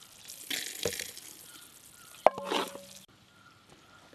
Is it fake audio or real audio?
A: real